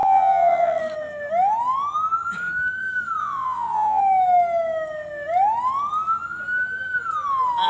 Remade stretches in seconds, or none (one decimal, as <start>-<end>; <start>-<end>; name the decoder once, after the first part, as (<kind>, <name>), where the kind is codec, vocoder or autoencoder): 0.0-0.8 (vocoder, WaveNeXt); 3.2-4.0